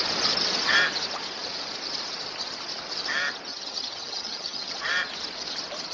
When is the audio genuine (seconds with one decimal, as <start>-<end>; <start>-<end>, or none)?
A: 0.0-3.5; 4.7-5.9